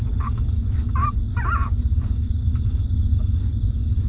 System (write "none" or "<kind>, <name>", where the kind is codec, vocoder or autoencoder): none